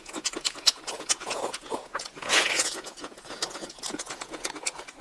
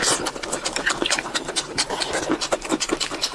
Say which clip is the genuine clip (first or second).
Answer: second